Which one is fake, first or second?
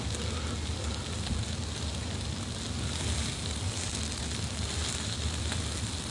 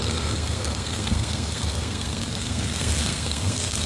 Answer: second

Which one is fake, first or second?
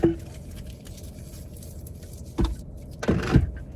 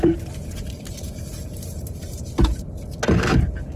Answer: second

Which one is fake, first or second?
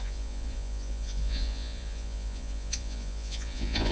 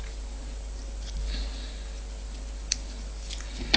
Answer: first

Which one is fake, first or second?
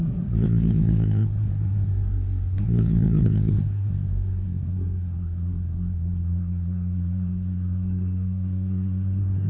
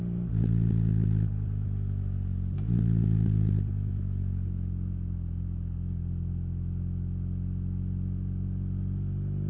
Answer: first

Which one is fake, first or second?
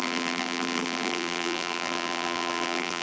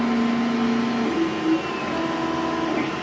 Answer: first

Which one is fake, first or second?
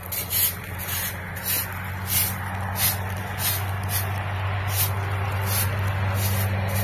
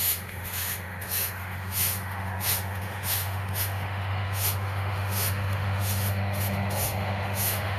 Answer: second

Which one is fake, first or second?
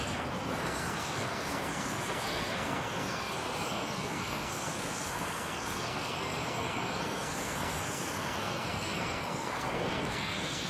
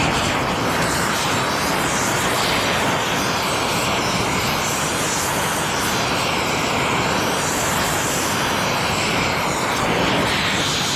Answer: first